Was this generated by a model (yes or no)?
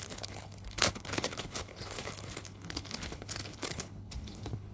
yes